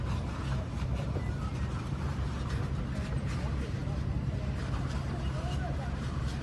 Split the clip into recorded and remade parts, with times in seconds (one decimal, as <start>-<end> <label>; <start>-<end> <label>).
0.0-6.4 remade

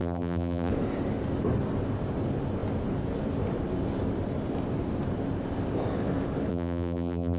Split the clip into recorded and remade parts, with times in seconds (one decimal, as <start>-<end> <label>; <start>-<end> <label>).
0.0-0.7 remade; 0.7-6.5 recorded; 6.5-7.4 remade

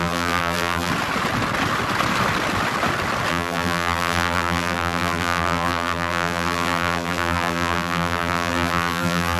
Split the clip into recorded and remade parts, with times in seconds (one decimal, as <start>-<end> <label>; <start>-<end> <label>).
0.0-0.9 remade; 0.9-3.3 recorded; 3.3-9.4 remade

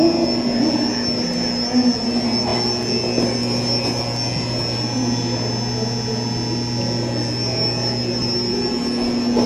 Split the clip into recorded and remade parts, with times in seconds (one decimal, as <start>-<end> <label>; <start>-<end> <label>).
0.0-9.5 recorded

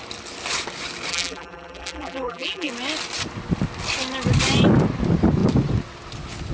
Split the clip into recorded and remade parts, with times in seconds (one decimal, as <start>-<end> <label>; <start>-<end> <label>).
0.0-1.1 recorded; 1.1-2.7 remade; 2.7-6.5 recorded

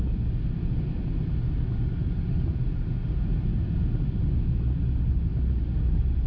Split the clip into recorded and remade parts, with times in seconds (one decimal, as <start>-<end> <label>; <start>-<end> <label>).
0.0-6.3 recorded

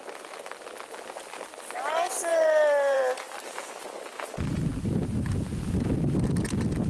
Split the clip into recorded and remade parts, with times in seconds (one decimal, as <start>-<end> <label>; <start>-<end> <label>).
0.0-2.3 recorded; 2.3-3.0 remade; 3.0-6.9 recorded